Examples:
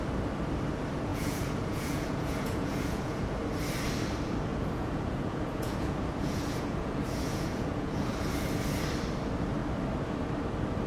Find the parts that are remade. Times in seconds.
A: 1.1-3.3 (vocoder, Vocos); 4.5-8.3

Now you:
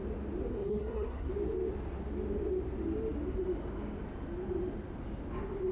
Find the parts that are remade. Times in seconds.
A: 0.5-1.3 (codec, SNAC)

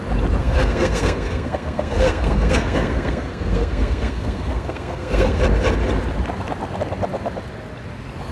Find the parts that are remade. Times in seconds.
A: 0.4-5.4 (codec, SNAC)

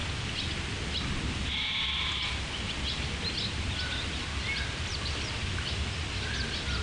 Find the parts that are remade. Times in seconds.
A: none

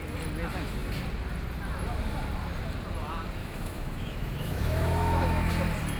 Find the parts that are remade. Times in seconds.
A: 3.4-5.5 (autoencoder, DAC-VAE)

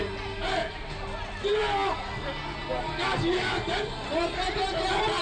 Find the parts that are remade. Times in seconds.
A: none

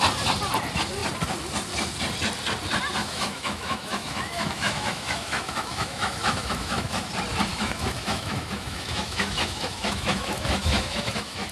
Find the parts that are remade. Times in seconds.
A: 3.0-7.1 (autoencoder, DAC-VAE); 7.5-11.5